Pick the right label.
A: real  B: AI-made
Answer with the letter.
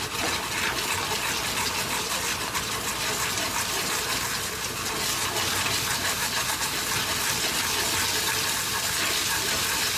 A